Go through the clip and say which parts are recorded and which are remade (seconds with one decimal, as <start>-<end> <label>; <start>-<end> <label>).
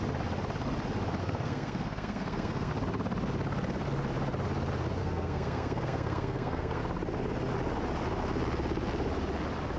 0.0-1.2 recorded; 1.2-2.7 remade; 2.7-5.0 recorded; 5.0-6.8 remade; 6.8-9.8 recorded